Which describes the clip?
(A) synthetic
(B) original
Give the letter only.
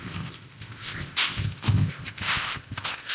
A